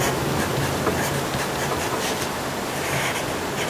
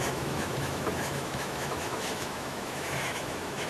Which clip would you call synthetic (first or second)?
second